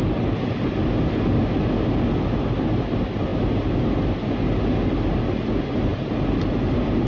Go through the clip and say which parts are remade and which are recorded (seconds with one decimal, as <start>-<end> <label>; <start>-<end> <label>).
0.0-7.1 recorded